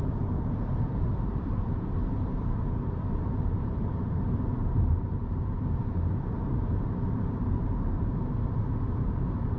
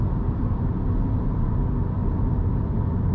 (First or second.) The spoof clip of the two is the first